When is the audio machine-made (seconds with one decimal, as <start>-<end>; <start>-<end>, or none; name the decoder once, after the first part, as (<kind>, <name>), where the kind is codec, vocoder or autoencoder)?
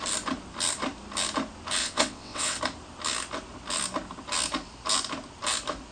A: 1.8-2.6 (vocoder, WaveNeXt)